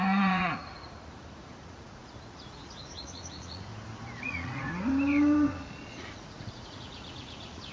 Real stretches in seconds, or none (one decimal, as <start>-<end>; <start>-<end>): 3.7-4.2; 4.7-5.9